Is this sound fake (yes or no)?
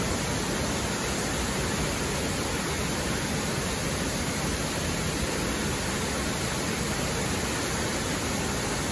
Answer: no